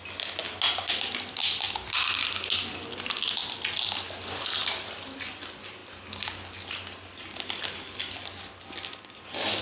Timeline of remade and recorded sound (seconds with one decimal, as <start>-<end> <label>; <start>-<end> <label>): 0.0-9.6 recorded